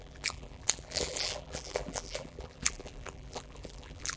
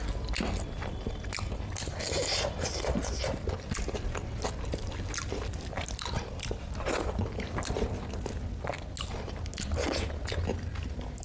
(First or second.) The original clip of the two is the second